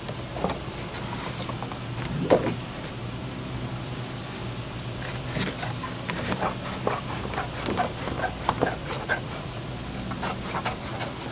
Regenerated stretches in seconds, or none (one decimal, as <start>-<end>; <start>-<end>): 8.8-9.6